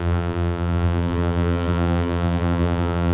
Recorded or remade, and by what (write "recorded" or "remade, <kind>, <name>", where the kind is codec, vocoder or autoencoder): remade, vocoder, BigVGAN v2